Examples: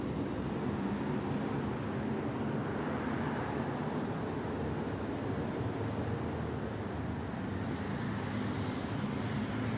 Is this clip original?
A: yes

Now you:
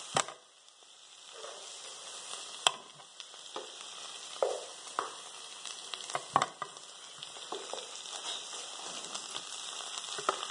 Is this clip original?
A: yes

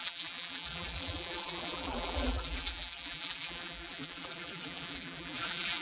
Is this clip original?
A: no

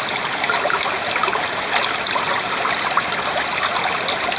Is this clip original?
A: yes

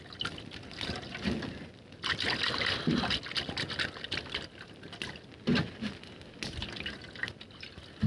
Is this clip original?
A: yes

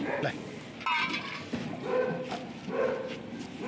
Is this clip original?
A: yes